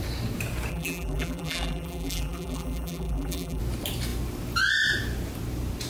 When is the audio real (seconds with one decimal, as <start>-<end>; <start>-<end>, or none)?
0.0-0.7; 3.6-5.9